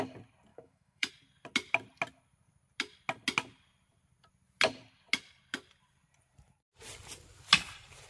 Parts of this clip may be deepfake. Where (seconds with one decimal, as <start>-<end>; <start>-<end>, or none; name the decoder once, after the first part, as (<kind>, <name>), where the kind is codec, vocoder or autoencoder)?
0.5-1.1 (autoencoder, DAC-VAE)